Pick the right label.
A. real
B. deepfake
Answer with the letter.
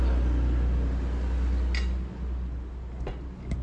A